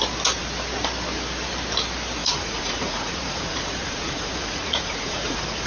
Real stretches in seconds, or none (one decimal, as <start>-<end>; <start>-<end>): 0.0-2.2